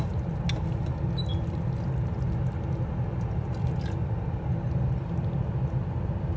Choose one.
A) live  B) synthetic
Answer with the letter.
A